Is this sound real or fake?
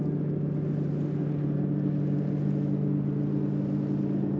real